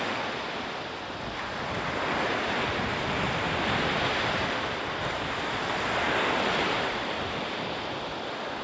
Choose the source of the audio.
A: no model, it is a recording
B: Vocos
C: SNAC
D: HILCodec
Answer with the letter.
A